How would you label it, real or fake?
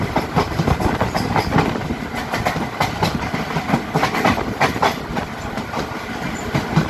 real